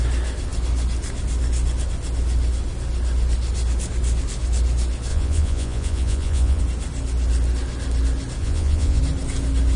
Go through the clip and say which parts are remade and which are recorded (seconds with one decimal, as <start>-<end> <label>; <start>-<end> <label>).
0.0-5.1 recorded; 5.1-6.6 remade; 6.6-8.4 recorded; 8.4-9.0 remade; 9.0-9.8 recorded